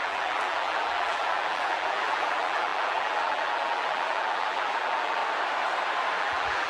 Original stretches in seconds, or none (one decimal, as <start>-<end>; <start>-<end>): 5.2-6.2